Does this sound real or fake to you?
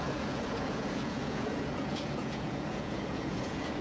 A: fake